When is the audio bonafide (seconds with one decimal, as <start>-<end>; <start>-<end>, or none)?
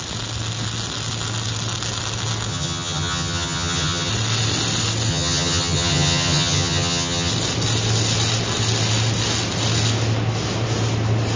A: 0.0-2.5; 4.1-5.1; 7.3-11.4